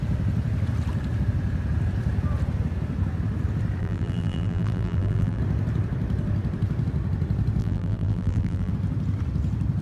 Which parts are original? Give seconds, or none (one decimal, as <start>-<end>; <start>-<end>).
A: 0.0-3.8; 5.4-7.6; 8.7-9.8